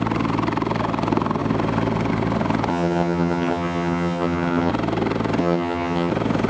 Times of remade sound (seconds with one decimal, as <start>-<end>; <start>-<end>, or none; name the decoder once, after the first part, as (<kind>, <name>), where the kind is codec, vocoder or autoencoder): 2.7-4.7 (vocoder, HiFi-GAN); 5.4-6.1

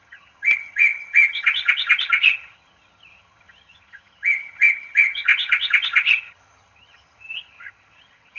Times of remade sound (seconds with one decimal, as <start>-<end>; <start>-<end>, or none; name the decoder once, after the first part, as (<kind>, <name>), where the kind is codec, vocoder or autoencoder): 0.0-8.4 (vocoder, HiFi-GAN)

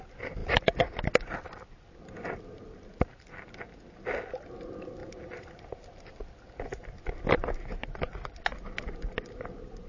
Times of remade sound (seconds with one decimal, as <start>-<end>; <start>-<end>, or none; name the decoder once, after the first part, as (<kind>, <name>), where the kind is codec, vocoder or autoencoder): none

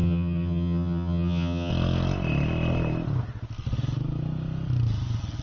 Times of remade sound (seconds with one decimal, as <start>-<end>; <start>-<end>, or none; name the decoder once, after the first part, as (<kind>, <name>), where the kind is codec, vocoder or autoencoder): 0.0-1.7 (vocoder, HiFi-GAN)

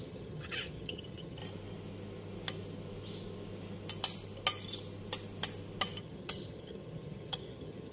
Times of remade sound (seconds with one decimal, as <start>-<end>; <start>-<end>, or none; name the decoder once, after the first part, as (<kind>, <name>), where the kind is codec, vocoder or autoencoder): 0.0-1.4 (vocoder, HiFi-GAN); 6.0-7.9

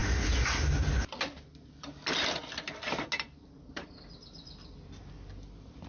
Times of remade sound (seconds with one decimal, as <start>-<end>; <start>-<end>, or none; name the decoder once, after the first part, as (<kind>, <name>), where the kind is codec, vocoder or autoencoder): none

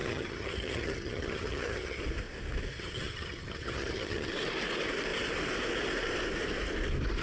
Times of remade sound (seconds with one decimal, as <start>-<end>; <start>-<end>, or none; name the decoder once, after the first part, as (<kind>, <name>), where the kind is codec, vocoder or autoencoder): 0.0-2.0 (vocoder, HiFi-GAN); 2.7-4.3